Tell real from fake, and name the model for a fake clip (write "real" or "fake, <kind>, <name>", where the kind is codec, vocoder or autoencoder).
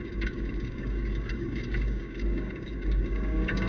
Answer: fake, codec, DAC